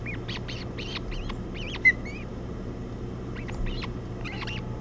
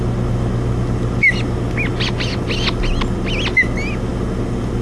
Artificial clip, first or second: first